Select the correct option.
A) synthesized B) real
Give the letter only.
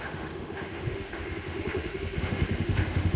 A